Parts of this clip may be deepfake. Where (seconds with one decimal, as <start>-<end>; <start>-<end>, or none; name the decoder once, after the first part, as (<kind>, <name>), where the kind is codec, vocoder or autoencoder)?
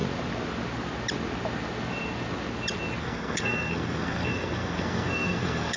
3.0-5.8 (codec, SNAC)